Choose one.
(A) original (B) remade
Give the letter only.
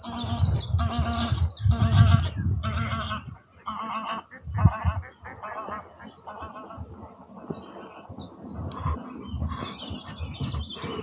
A